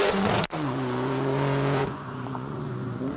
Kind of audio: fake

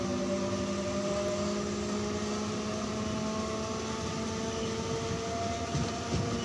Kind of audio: real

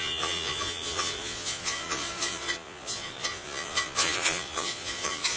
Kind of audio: fake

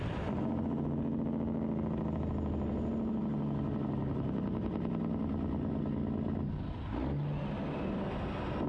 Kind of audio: real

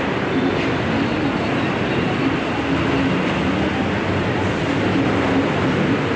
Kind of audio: real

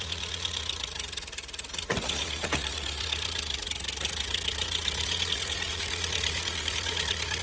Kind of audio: fake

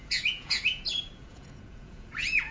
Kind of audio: fake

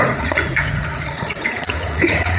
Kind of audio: fake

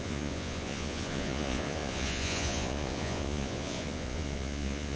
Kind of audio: fake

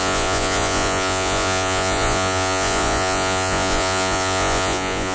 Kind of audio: fake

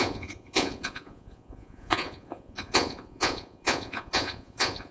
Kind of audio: fake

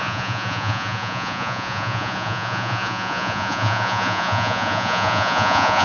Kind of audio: fake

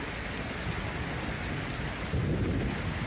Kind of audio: real